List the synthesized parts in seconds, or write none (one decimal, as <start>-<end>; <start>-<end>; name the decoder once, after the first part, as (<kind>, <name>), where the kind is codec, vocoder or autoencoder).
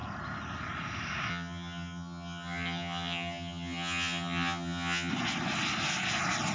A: 1.3-5.1 (vocoder, HiFi-GAN)